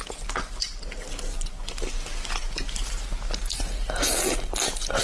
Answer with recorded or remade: recorded